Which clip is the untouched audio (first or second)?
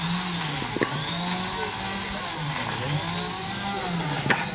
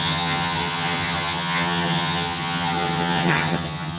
first